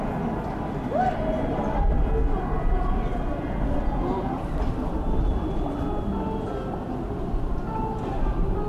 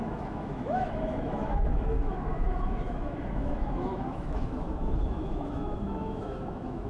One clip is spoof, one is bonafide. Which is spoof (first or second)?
second